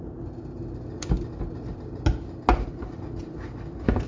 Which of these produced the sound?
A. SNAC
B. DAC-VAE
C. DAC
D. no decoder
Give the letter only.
D